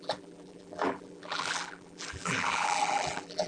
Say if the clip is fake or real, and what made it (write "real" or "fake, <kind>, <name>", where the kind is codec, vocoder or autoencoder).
fake, vocoder, BigVGAN v2